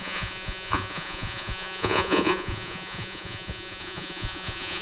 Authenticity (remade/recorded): remade